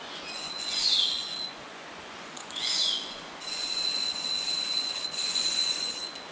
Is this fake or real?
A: fake